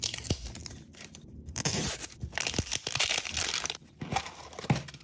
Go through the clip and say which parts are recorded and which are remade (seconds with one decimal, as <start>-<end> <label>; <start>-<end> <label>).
0.0-0.6 recorded; 0.6-2.0 remade; 2.0-5.0 recorded